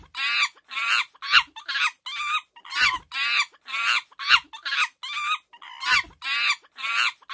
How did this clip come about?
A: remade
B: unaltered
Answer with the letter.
B